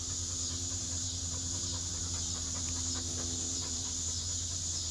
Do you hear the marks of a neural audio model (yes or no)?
yes